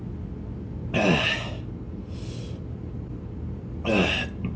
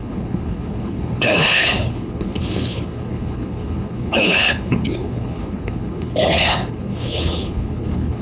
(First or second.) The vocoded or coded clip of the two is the second